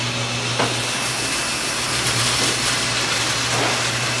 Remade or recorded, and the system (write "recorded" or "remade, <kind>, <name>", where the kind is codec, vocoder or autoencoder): recorded